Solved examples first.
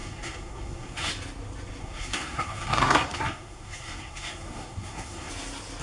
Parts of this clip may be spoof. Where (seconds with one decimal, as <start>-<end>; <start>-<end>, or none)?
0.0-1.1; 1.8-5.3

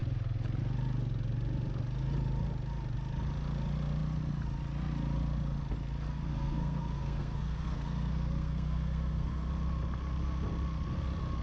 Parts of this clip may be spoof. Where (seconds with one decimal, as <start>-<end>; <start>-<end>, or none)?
6.1-9.5

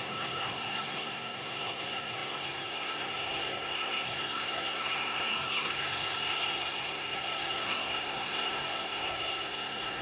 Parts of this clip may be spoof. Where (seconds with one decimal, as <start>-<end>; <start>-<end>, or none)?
0.0-10.0